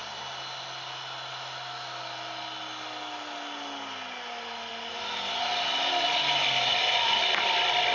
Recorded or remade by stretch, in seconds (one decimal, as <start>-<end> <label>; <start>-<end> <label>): 0.0-7.9 recorded